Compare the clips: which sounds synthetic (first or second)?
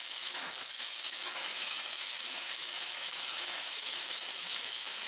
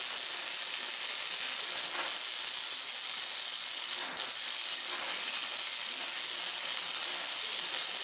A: first